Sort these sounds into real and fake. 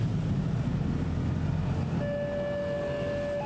real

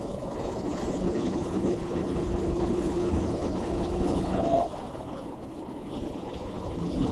fake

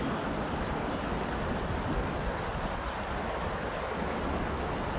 real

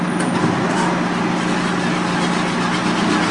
real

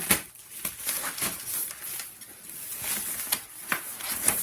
real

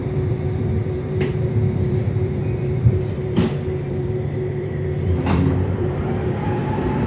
fake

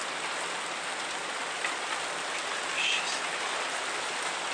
real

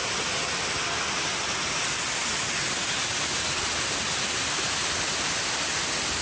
real